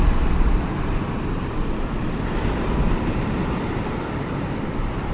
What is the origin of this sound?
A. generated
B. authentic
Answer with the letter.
B